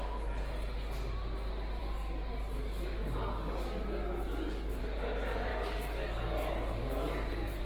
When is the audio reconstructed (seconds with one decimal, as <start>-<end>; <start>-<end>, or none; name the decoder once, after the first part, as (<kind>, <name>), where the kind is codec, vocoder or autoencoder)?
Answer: 1.8-4.8 (codec, DAC); 5.5-7.6